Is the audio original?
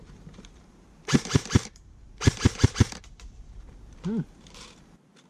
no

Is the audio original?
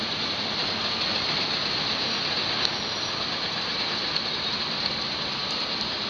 yes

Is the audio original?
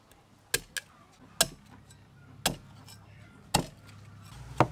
yes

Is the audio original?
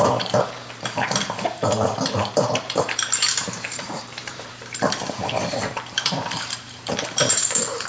no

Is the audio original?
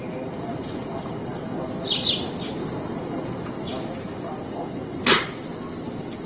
yes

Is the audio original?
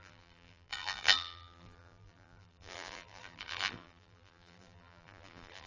no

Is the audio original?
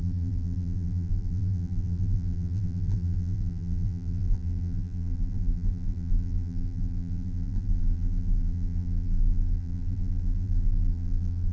no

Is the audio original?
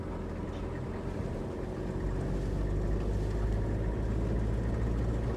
yes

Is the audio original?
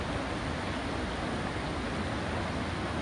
yes